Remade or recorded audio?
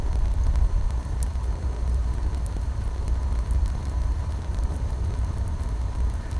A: remade